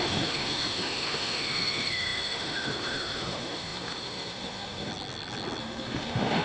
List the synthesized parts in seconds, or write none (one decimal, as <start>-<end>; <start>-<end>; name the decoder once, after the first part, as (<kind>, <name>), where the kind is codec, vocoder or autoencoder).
0.0-4.9 (autoencoder, DAC-VAE); 5.6-6.4